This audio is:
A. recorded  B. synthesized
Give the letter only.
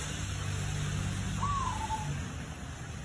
A